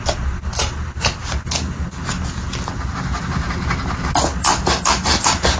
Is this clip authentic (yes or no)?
yes